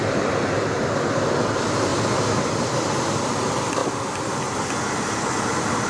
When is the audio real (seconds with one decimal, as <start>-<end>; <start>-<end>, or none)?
0.0-5.9